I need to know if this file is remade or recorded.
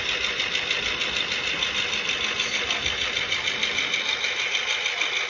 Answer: recorded